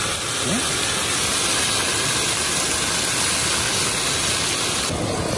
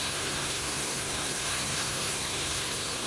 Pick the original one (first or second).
first